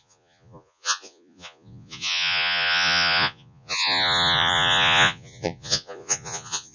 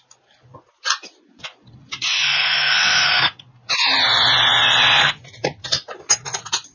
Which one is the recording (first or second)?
second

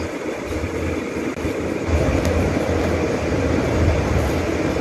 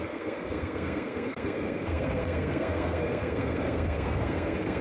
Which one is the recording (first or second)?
first